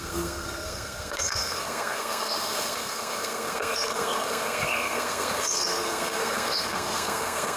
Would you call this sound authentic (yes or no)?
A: no